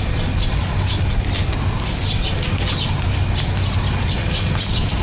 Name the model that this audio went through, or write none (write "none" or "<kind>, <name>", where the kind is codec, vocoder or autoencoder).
none